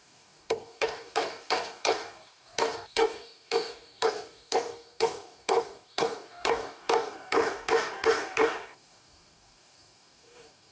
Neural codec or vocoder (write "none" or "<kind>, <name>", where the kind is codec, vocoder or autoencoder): codec, DAC